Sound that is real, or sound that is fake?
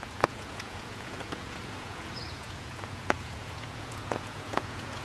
fake